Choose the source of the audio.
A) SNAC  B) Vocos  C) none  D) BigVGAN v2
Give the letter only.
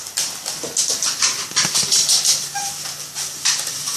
C